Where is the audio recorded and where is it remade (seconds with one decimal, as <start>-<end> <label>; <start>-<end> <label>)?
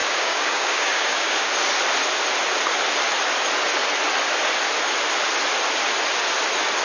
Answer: 0.0-1.5 remade; 1.5-6.8 recorded